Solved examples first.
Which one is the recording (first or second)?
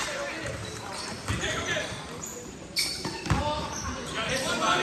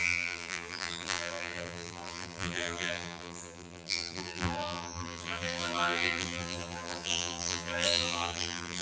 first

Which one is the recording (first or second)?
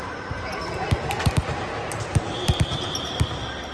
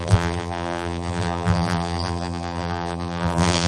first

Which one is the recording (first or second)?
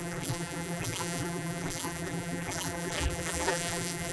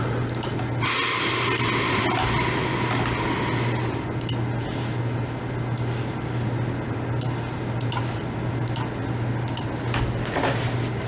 second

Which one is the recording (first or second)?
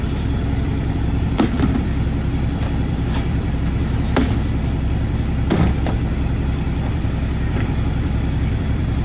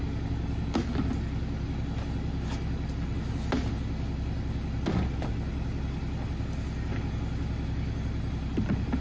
second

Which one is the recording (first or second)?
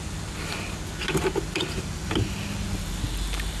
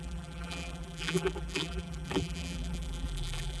first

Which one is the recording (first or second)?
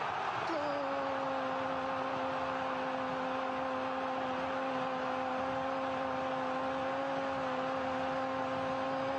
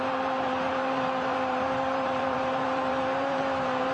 first